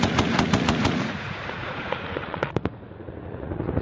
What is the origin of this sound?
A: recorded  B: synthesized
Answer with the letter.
B